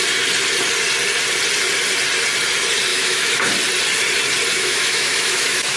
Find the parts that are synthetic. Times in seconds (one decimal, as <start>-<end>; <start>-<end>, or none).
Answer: 2.9-3.5; 4.5-5.8